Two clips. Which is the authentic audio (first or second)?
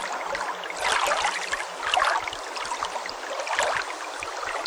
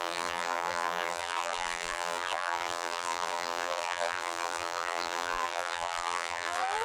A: first